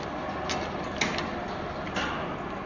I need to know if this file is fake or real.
real